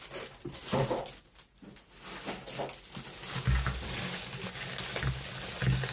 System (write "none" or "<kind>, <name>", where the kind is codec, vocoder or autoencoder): none